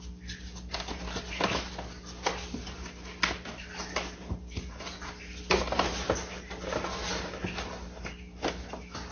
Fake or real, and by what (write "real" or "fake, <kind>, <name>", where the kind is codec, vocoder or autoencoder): real